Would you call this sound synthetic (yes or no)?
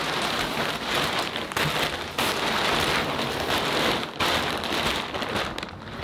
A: no